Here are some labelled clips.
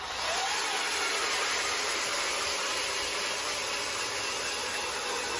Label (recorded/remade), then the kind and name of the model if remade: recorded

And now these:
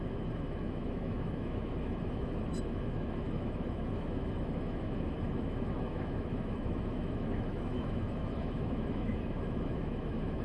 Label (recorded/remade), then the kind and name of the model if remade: remade, autoencoder, DAC-VAE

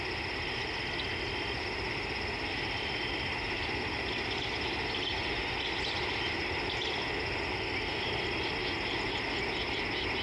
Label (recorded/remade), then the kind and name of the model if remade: recorded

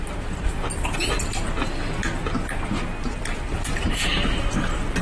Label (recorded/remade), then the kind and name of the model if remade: recorded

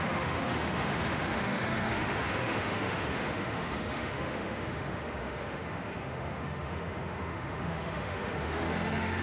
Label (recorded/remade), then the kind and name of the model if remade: remade, autoencoder, DAC-VAE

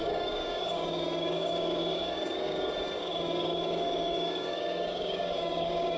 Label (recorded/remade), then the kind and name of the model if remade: remade, codec, DAC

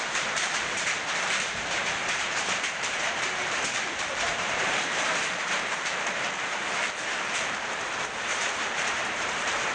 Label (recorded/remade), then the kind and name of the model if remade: remade, vocoder, BigVGAN v2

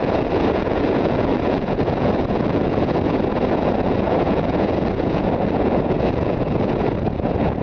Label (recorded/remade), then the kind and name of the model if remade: remade, vocoder, Vocos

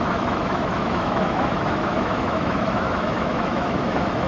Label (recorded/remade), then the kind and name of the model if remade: remade, autoencoder, DAC-VAE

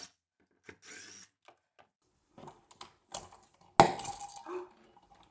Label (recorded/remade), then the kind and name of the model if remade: recorded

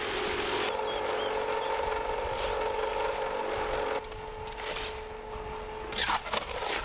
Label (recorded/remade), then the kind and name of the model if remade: recorded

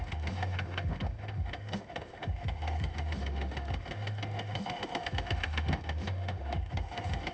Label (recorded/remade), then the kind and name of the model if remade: remade, autoencoder, DAC-VAE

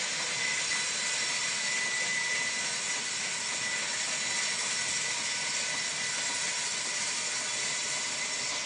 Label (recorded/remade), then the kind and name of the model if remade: recorded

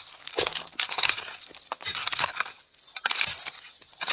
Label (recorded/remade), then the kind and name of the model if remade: recorded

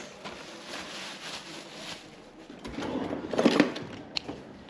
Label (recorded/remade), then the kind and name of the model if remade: recorded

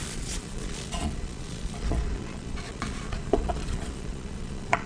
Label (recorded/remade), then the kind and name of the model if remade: remade, vocoder, Vocos